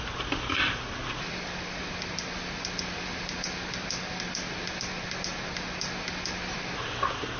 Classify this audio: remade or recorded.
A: recorded